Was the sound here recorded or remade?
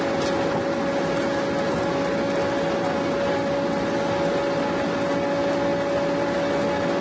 recorded